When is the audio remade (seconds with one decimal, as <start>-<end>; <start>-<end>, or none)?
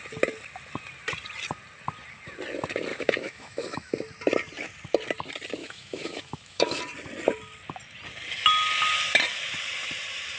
2.9-3.9; 5.6-6.8